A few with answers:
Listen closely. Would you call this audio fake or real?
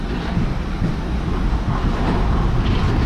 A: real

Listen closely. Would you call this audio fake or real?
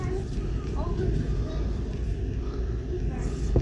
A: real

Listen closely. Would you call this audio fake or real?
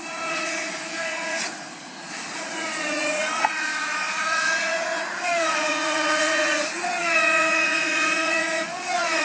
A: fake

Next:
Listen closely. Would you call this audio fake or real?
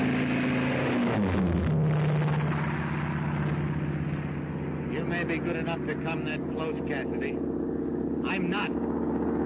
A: real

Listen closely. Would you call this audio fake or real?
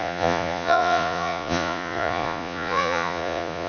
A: fake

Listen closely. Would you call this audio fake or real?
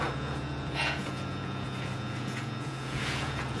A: fake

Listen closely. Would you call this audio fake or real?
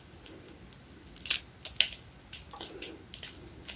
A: real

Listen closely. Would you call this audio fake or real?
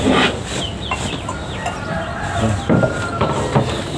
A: real